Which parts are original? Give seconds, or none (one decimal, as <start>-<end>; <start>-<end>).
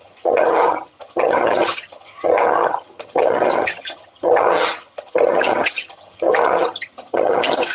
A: none